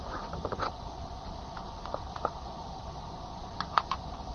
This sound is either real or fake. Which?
fake